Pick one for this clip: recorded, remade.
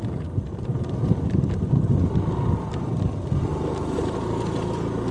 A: recorded